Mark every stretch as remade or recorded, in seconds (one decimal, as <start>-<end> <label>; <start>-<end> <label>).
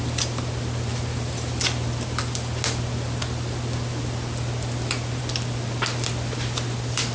0.0-7.1 recorded